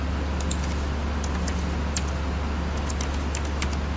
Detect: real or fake real